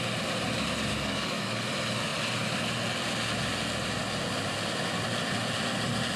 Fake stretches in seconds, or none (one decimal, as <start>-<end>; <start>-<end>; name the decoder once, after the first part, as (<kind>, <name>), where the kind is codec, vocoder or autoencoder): 0.9-1.7 (codec, DAC)

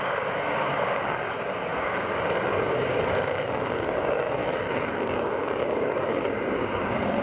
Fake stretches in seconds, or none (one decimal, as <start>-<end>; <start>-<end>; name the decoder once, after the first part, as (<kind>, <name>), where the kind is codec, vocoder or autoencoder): 0.0-4.4 (codec, DAC); 5.0-7.2

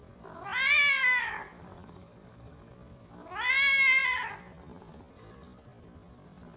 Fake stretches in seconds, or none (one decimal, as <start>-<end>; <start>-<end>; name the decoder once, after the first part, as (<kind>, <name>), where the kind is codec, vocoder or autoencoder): 1.0-2.7 (codec, DAC)